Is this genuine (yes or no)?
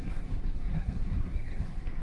no